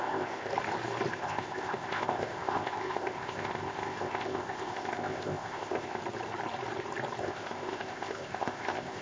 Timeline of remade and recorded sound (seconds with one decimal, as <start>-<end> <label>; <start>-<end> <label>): 0.0-0.5 remade; 0.5-1.1 recorded; 1.1-6.0 remade; 6.0-7.2 recorded; 7.2-9.0 remade